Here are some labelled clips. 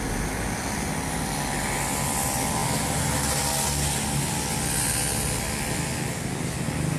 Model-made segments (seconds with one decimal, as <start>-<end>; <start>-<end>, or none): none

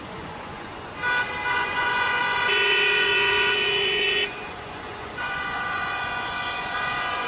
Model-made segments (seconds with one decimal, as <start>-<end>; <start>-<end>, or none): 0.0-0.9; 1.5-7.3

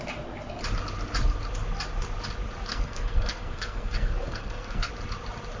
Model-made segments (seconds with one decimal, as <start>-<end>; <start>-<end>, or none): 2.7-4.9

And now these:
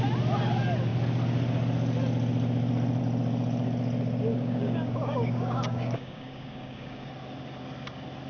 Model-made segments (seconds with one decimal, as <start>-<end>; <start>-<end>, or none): 4.3-7.1

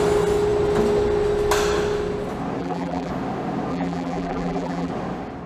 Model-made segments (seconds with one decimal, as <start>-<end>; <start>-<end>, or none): 2.6-3.1; 3.7-4.9

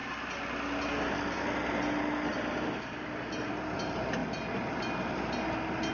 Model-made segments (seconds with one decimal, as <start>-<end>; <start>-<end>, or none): none